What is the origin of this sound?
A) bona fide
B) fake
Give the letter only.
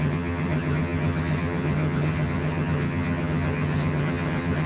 B